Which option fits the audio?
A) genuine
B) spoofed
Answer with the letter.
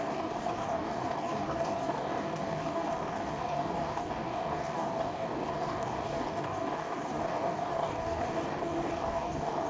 B